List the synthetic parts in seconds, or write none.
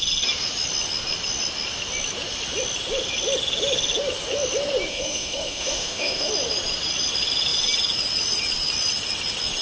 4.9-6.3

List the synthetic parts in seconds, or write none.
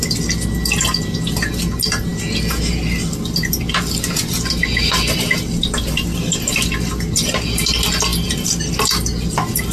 none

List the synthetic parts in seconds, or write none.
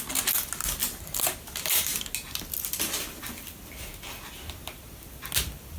none